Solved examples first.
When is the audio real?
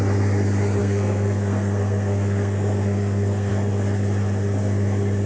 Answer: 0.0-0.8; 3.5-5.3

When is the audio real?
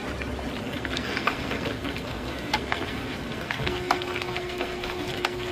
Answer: 0.0-0.6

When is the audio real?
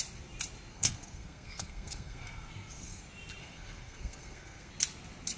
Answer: 0.0-0.7; 3.0-3.4; 4.7-5.4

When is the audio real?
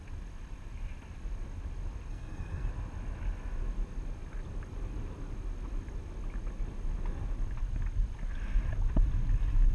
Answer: 0.0-2.1; 2.7-9.7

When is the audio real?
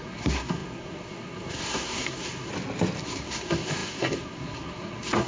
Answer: 2.5-3.0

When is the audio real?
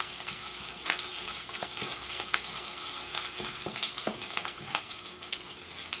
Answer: none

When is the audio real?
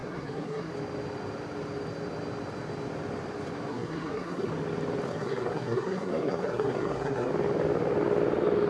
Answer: 0.7-3.7; 4.5-5.1; 7.3-8.7